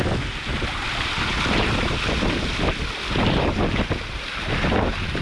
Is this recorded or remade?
recorded